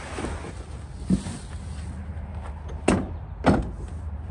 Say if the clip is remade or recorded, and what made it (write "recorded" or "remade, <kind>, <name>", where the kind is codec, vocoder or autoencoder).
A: recorded